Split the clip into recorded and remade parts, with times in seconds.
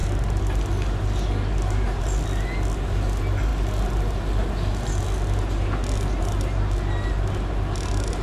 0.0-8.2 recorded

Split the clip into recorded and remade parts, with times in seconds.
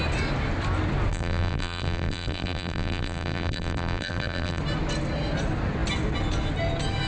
0.0-1.1 recorded; 1.1-4.6 remade; 4.6-7.1 recorded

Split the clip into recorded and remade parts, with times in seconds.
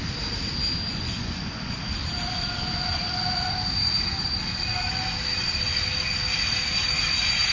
0.0-0.9 recorded; 0.9-1.8 remade; 1.8-7.5 recorded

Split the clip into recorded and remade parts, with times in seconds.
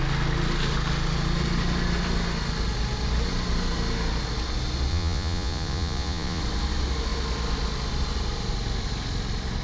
0.0-4.9 recorded; 4.9-6.4 remade; 6.4-9.6 recorded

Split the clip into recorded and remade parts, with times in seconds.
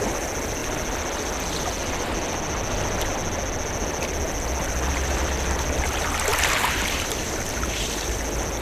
0.0-6.3 recorded; 6.3-8.2 remade; 8.2-8.6 recorded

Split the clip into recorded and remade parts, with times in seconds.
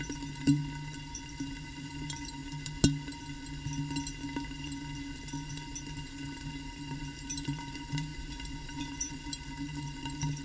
0.0-0.6 remade; 0.6-1.3 recorded; 1.3-2.4 remade; 2.4-6.5 recorded; 6.5-10.4 remade